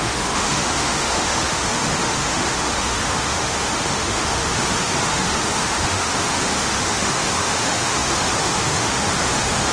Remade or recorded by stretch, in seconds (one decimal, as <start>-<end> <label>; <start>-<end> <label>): 0.0-9.7 remade